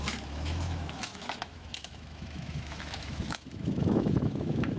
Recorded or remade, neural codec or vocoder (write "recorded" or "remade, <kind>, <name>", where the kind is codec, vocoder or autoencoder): remade, autoencoder, DAC-VAE